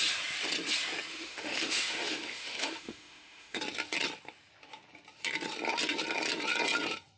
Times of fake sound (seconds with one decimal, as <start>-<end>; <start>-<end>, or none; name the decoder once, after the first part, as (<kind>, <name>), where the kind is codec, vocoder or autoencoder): 1.1-3.6 (autoencoder, DAC-VAE)